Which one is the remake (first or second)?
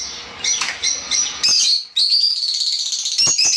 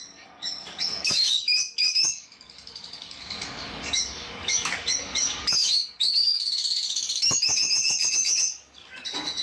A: second